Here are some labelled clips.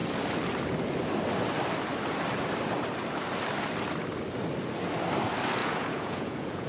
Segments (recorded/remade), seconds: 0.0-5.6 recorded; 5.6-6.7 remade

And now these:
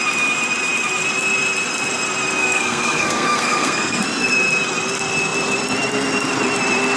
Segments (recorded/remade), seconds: 0.0-2.4 recorded; 2.4-4.0 remade; 4.0-7.0 recorded

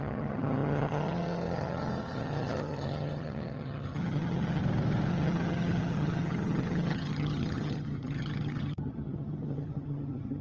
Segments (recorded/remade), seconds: 0.0-4.6 remade; 4.6-5.1 recorded; 5.1-10.4 remade

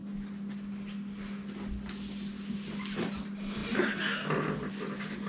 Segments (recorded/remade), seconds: 0.0-5.3 recorded

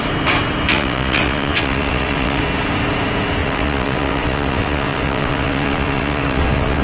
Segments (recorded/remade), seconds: 0.0-0.7 recorded; 0.7-2.4 remade; 2.4-3.4 recorded; 3.4-6.8 remade